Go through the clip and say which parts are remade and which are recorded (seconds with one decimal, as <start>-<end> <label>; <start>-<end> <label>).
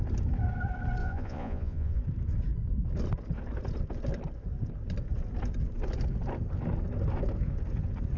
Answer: 0.0-1.0 recorded; 1.0-2.0 remade; 2.0-8.2 recorded